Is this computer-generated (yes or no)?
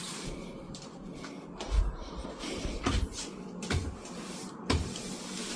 no